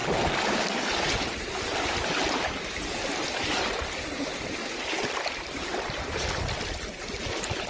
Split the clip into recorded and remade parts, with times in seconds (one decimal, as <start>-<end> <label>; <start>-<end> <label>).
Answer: 0.0-7.7 recorded

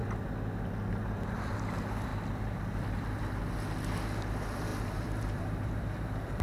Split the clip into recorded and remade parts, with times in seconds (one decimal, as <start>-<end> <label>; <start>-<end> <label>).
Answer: 0.0-1.0 recorded; 1.0-2.1 remade; 2.1-4.2 recorded; 4.2-6.4 remade

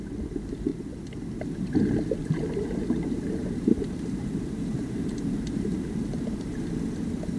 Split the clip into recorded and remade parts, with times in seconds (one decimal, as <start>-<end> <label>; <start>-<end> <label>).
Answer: 0.0-2.2 recorded; 2.2-6.6 remade; 6.6-7.4 recorded

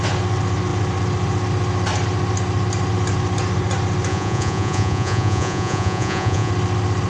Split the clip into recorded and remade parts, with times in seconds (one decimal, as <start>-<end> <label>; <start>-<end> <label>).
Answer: 0.0-4.1 recorded; 4.1-6.5 remade; 6.5-7.1 recorded